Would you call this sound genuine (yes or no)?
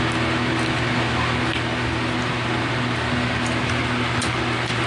yes